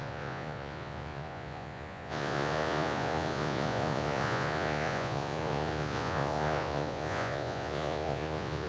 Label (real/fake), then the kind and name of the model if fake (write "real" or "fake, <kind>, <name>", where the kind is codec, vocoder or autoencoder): fake, vocoder, Vocos